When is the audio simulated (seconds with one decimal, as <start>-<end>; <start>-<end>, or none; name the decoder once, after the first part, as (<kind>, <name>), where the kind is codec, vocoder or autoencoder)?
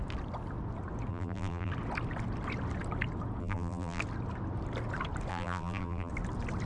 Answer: 1.1-1.7 (vocoder, BigVGAN v2); 3.4-4.0; 5.3-6.1